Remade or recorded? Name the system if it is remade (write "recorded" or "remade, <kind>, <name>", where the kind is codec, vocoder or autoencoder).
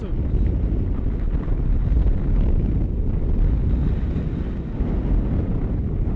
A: recorded